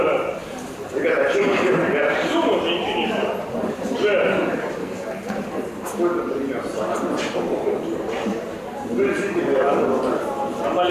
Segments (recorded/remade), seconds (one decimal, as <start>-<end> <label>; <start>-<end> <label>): 0.0-4.8 recorded; 4.8-5.4 remade; 5.4-10.9 recorded